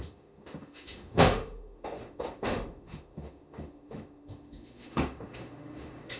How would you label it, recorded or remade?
remade